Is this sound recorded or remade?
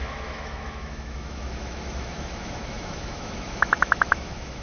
remade